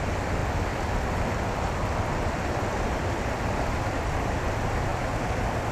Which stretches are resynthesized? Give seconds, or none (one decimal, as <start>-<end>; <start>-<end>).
0.0-4.9